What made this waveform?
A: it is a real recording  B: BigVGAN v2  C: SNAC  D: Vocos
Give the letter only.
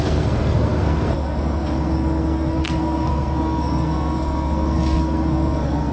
C